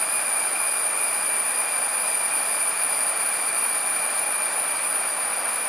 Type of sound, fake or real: real